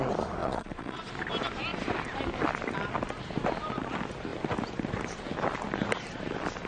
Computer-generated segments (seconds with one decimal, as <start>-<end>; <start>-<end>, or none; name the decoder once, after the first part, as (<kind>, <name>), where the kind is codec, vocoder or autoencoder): 0.4-1.1 (vocoder, Vocos)